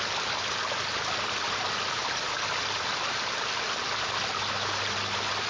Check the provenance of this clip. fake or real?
real